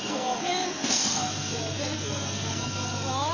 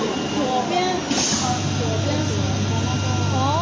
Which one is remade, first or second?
first